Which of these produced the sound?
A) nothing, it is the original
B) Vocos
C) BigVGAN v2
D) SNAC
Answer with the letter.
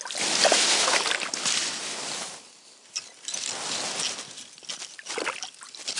A